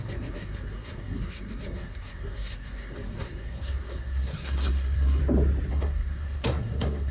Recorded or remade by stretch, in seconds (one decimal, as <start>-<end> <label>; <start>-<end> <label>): 0.0-5.2 remade; 5.2-5.7 recorded; 5.7-7.1 remade